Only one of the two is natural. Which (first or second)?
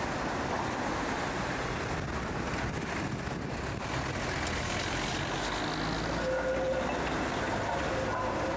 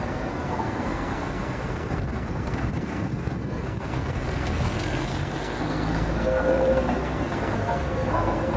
first